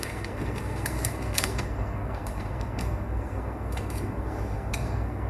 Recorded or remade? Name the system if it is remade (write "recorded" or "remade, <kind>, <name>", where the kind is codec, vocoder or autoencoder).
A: remade, codec, SNAC